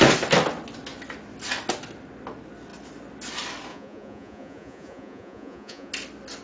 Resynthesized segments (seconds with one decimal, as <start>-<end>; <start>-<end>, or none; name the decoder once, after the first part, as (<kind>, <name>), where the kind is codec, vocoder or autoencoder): 3.7-5.9 (vocoder, Vocos)